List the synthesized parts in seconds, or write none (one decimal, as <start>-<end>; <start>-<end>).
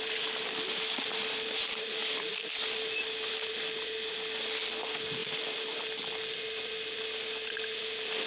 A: 1.6-2.6; 5.2-5.8